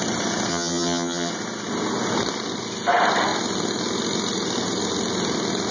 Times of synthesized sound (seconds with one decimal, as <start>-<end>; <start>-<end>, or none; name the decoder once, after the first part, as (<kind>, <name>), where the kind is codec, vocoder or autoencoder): 0.5-1.3 (vocoder, HiFi-GAN)

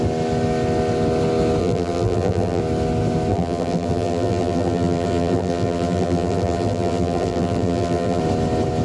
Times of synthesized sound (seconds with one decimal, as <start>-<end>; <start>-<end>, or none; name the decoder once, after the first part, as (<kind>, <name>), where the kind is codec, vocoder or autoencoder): 1.6-2.6 (vocoder, BigVGAN v2); 3.3-8.2

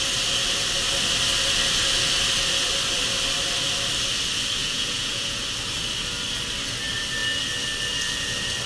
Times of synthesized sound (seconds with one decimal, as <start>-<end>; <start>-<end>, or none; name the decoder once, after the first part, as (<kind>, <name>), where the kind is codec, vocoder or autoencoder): 4.6-5.4 (vocoder, Vocos)

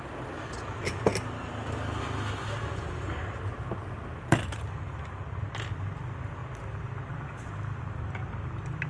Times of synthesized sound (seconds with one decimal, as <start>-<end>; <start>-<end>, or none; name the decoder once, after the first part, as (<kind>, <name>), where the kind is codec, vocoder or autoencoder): none

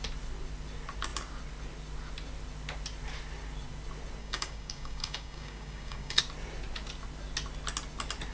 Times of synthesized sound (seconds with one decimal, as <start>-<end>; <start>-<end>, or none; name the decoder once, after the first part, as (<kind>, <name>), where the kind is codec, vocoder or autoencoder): 4.2-6.2 (codec, DAC)

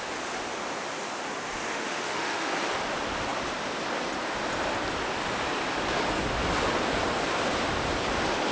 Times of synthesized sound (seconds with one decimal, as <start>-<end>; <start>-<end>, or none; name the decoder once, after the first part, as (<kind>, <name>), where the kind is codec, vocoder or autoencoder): 1.7-2.5 (autoencoder, DAC-VAE)

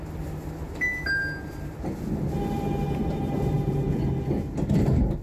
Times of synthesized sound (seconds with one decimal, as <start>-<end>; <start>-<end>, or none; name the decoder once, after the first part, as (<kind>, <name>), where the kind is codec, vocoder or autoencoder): 3.0-4.0 (vocoder, BigVGAN v2)